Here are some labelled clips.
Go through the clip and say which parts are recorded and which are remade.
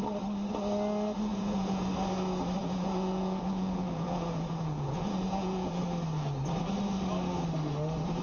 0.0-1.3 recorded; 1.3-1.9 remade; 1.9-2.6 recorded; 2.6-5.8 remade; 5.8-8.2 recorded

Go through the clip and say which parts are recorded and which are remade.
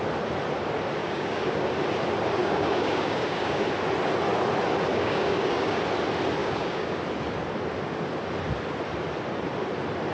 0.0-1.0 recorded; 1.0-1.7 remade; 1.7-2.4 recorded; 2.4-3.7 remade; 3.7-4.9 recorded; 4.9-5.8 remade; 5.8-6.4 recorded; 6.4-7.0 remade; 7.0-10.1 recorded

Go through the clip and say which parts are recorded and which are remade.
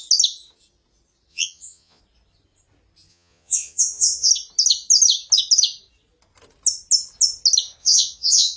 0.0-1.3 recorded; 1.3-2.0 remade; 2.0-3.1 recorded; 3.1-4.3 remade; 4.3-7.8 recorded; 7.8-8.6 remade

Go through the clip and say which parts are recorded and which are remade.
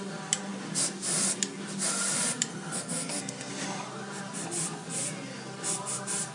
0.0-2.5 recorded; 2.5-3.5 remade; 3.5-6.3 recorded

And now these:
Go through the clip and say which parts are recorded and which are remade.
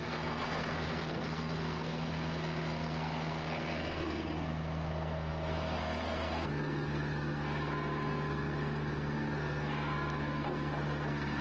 0.0-11.4 remade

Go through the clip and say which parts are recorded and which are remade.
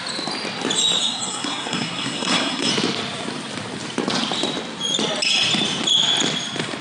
0.0-1.0 recorded; 1.0-2.7 remade; 2.7-6.8 recorded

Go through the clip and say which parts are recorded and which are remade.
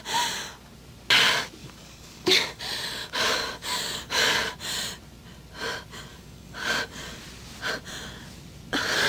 0.0-1.6 recorded; 1.6-2.6 remade; 2.6-3.0 recorded; 3.0-4.5 remade; 4.5-6.1 recorded; 6.1-7.2 remade; 7.2-9.1 recorded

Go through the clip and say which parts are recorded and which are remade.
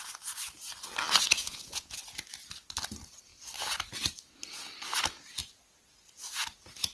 0.0-1.4 recorded; 1.4-2.0 remade; 2.0-6.9 recorded